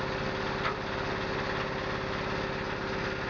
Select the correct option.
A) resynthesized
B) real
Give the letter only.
B